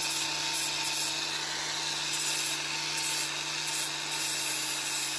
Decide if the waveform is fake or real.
real